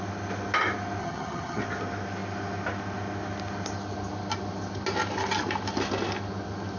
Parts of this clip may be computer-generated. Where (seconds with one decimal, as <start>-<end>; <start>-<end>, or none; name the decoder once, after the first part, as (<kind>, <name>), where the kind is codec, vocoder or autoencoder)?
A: 1.0-1.6 (vocoder, HiFi-GAN)